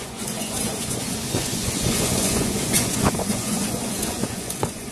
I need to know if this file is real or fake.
fake